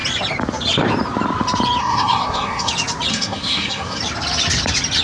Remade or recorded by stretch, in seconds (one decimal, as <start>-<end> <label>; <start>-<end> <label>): 0.0-1.8 recorded; 1.8-2.7 remade; 2.7-3.1 recorded; 3.1-4.0 remade; 4.0-5.0 recorded